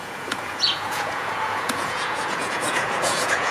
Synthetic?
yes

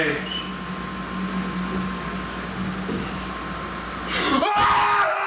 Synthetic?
no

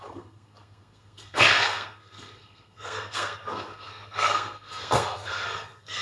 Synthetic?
yes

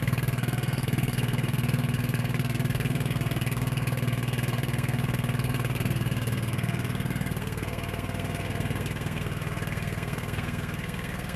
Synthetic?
yes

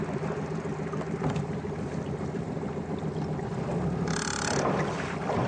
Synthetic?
yes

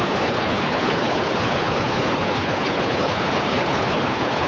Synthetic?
yes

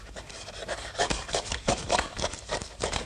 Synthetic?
yes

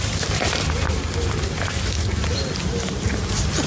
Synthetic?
no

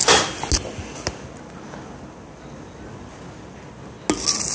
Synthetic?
no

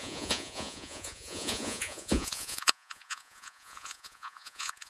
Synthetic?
yes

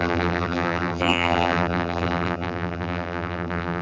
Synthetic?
yes